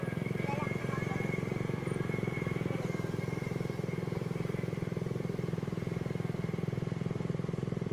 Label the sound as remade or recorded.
recorded